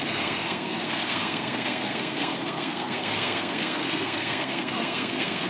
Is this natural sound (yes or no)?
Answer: no